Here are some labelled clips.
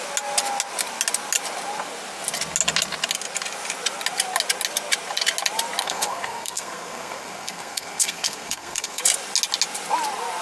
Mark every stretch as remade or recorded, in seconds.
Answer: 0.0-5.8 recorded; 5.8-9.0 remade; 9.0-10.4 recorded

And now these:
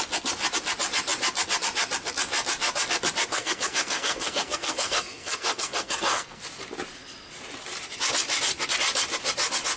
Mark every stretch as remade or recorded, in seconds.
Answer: 0.0-3.3 recorded; 3.3-6.4 remade; 6.4-9.8 recorded